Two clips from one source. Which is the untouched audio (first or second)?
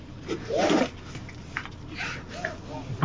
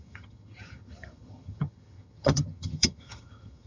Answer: first